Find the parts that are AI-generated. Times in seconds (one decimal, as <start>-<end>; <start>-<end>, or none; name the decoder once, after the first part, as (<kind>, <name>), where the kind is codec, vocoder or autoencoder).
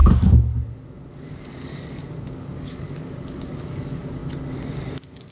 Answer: 0.0-4.2 (codec, DAC); 4.7-5.3